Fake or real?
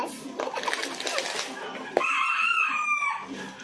real